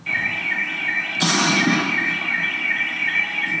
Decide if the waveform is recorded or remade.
recorded